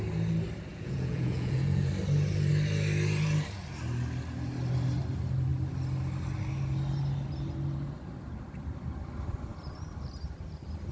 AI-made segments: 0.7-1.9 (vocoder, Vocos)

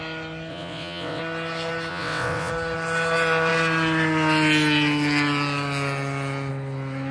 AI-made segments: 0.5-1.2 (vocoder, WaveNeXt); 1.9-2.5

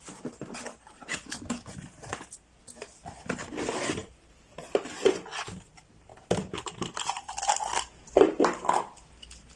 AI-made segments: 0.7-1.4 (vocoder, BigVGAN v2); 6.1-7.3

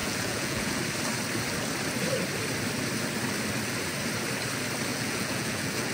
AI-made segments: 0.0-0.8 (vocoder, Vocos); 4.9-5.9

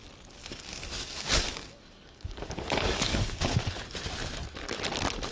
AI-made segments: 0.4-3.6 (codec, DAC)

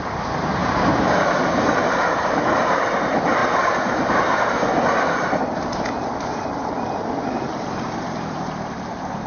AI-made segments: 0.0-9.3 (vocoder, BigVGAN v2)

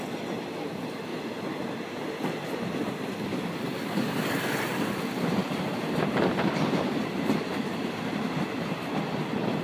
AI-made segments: 3.3-5.0 (vocoder, BigVGAN v2); 5.4-9.0